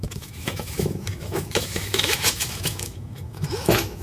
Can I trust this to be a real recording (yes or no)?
no